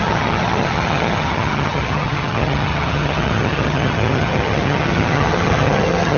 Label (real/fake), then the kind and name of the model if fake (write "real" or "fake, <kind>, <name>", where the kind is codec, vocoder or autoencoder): fake, vocoder, HiFi-GAN